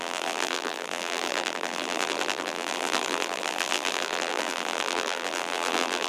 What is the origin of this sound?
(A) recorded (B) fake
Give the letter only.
B